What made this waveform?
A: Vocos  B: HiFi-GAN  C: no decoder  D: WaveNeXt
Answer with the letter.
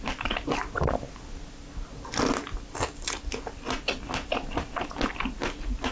C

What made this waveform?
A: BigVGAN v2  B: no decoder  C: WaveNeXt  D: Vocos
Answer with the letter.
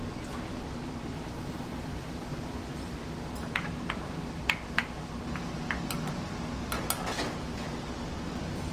B